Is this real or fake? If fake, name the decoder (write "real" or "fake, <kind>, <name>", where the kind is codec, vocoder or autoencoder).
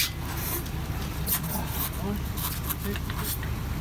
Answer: real